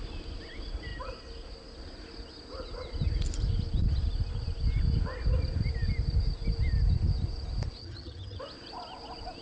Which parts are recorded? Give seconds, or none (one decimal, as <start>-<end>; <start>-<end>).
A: 0.0-7.8; 8.4-9.4